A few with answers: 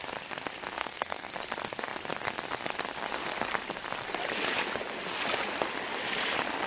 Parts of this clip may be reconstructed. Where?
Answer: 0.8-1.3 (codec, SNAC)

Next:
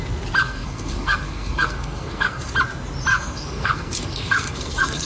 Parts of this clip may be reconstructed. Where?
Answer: 0.4-2.5 (codec, SNAC); 3.1-5.1

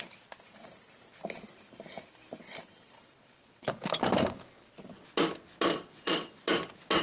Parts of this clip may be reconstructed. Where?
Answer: 2.7-3.8 (vocoder, WaveNeXt); 5.7-6.4

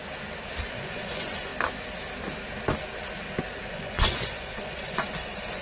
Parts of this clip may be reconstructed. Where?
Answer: 0.7-1.5 (vocoder, Vocos); 3.7-5.6

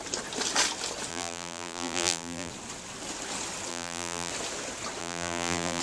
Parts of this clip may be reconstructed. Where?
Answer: 1.1-2.5 (vocoder, BigVGAN v2); 3.7-4.3; 5.0-5.8

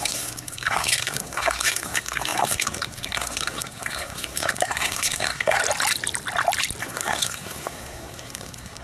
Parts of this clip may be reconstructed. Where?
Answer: 0.0-5.6 (codec, SNAC); 6.8-8.8

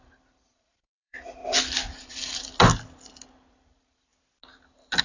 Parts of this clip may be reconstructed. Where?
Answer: 0.0-1.4 (vocoder, BigVGAN v2); 2.1-2.5; 3.5-4.1

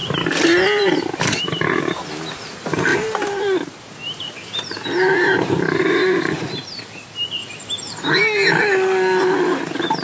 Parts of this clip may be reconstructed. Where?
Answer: 0.0-1.2 (vocoder, BigVGAN v2); 2.9-6.8; 7.4-8.1